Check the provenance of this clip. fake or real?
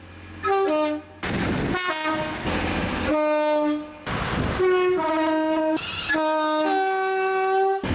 real